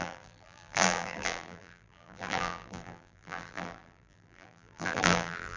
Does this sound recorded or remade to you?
remade